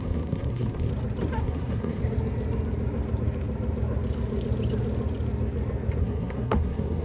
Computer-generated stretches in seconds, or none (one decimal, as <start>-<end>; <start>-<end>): 0.0-0.9; 1.4-2.0; 6.0-7.0